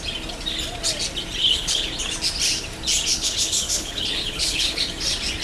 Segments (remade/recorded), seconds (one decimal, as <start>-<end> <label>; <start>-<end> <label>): 0.0-1.4 recorded; 1.4-1.9 remade; 1.9-3.1 recorded; 3.1-4.8 remade; 4.8-5.4 recorded